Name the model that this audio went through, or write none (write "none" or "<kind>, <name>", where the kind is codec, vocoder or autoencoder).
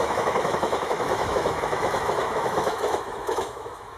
autoencoder, DAC-VAE